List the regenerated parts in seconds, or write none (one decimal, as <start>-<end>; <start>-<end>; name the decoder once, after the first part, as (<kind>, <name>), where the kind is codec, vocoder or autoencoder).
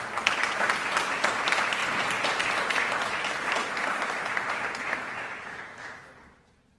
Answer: 1.8-5.1 (vocoder, BigVGAN v2)